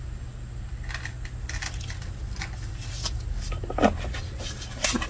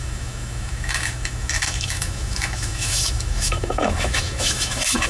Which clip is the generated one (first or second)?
second